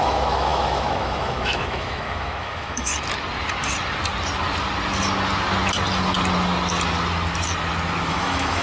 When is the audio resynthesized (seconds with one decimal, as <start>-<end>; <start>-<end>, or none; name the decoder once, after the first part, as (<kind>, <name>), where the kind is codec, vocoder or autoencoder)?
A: 0.0-2.9 (autoencoder, DAC-VAE); 8.1-8.6